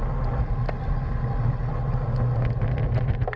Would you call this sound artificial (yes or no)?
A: no